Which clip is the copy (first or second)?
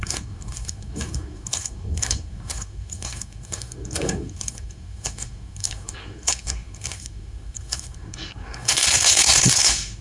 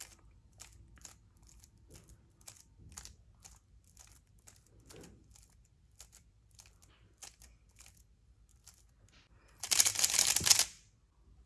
first